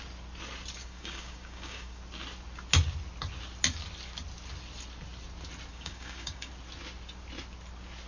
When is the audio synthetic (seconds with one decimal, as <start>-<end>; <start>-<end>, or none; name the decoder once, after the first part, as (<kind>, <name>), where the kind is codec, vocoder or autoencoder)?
0.8-2.0 (codec, DAC); 5.7-6.5